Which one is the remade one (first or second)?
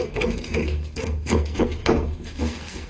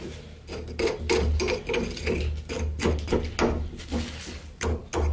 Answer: first